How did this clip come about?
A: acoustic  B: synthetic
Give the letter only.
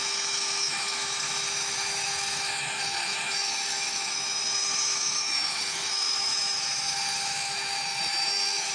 B